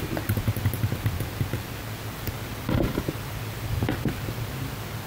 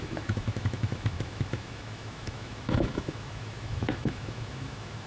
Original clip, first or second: first